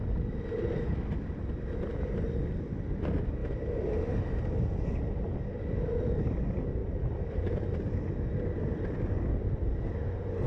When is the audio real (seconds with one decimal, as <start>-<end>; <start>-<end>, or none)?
0.0-3.4; 4.2-6.8; 7.4-10.5